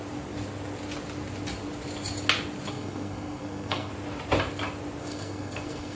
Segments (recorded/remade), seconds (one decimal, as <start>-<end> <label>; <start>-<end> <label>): 0.0-2.7 recorded; 2.7-3.9 remade; 3.9-5.0 recorded; 5.0-6.0 remade